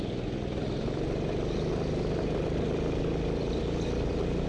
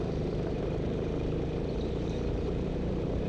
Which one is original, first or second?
first